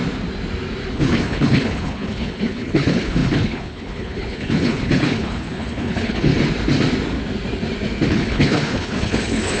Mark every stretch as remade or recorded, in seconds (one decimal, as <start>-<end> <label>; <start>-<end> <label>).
0.0-0.9 recorded; 0.9-6.3 remade; 6.3-8.1 recorded; 8.1-9.6 remade